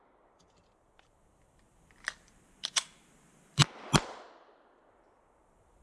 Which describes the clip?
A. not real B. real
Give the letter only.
A